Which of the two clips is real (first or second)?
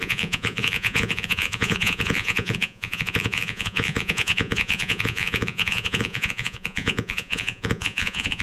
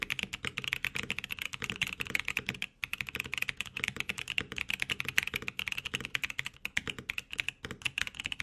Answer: second